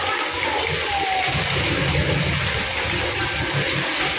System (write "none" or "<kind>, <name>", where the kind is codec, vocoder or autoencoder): none